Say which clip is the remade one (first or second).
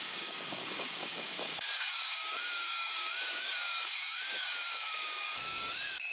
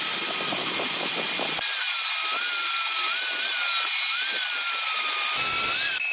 first